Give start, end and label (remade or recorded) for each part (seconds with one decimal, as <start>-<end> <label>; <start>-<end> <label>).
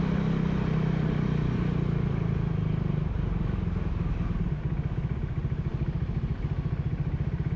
0.0-7.6 recorded